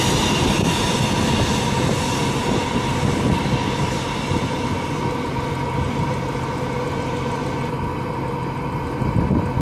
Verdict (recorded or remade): recorded